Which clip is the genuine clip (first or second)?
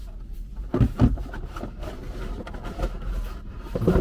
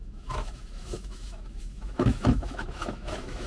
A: first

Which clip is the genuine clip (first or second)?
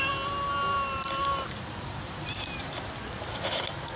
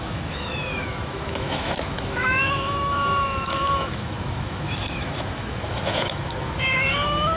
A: first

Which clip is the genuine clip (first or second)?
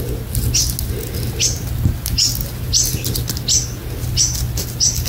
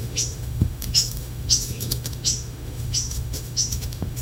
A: first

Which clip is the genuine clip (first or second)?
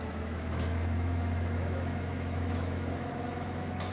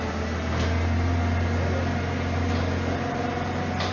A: second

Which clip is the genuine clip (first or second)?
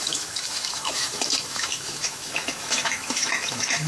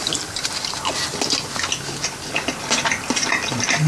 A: second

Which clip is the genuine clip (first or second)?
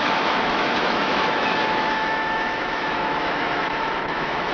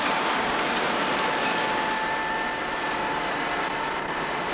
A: second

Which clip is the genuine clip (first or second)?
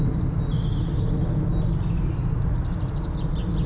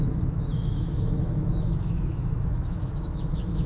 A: first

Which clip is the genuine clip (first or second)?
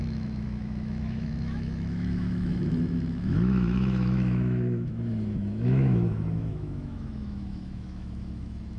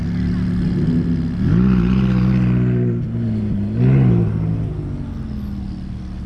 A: second